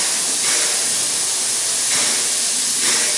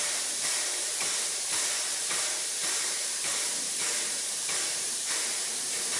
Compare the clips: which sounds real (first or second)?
first